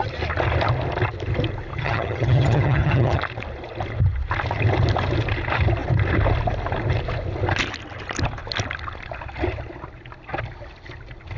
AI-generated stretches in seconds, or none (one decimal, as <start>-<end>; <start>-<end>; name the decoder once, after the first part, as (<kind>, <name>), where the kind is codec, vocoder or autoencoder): 1.7-3.2 (vocoder, HiFi-GAN)